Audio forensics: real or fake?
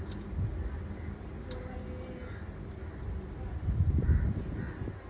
real